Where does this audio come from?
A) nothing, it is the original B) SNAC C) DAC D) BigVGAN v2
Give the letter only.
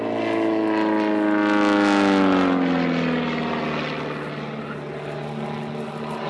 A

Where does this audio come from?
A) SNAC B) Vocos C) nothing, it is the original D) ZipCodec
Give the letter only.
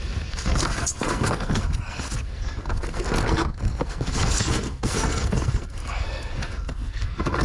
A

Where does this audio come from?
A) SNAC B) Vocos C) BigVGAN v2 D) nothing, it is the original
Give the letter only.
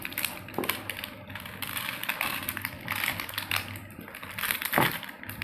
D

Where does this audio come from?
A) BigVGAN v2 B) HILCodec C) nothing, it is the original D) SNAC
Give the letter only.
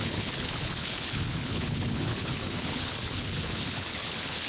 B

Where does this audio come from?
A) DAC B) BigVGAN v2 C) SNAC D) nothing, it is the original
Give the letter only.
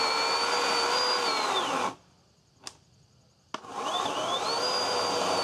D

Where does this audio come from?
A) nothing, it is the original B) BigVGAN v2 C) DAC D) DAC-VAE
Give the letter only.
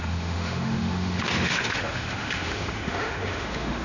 D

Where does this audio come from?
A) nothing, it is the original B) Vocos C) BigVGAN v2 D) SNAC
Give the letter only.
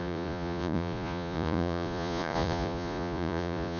B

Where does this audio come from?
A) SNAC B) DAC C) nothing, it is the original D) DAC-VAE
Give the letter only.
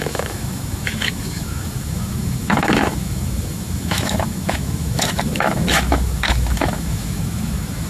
D